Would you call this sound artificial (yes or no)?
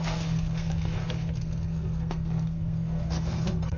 yes